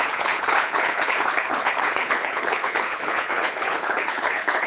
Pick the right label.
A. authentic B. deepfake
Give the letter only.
B